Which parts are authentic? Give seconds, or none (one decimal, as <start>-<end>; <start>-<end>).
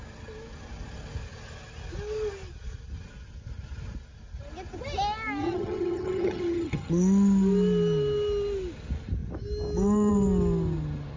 0.0-5.4; 6.9-11.2